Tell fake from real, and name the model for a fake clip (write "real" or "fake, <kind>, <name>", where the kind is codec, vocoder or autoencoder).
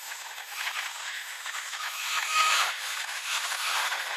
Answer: fake, autoencoder, DAC-VAE